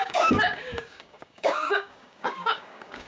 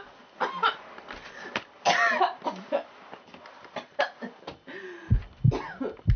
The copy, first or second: first